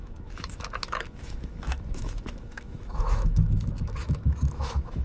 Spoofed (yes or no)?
yes